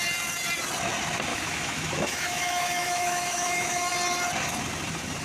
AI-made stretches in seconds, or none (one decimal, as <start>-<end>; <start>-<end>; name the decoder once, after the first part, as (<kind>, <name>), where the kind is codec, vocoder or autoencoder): 1.3-3.9 (autoencoder, DAC-VAE)